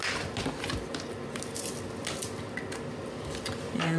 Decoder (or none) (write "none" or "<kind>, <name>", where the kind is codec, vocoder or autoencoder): none